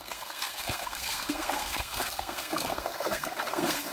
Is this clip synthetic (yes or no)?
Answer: yes